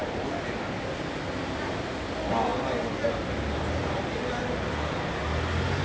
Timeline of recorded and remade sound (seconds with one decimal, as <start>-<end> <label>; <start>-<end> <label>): 0.0-3.8 recorded; 3.8-4.4 remade; 4.4-5.8 recorded